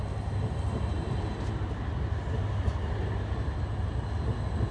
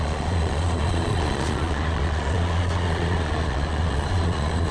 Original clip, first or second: first